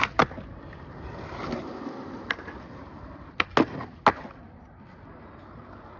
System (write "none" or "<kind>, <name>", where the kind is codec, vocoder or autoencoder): none